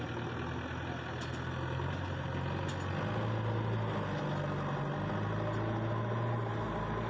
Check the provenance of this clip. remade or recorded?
recorded